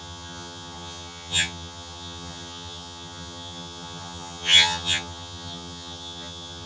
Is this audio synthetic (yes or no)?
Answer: yes